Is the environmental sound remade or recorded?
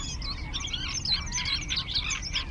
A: recorded